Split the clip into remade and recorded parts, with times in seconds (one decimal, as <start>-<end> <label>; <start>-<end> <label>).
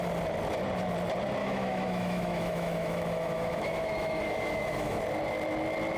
0.0-1.4 recorded; 1.4-5.0 remade; 5.0-6.0 recorded